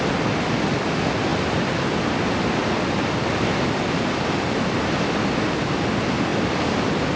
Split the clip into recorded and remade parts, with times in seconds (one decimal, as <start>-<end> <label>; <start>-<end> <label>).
0.0-7.2 recorded